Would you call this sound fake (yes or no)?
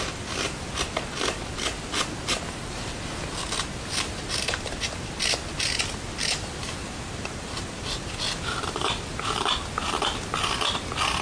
no